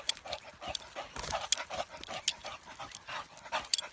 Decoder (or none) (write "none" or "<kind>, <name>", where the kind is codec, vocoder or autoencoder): none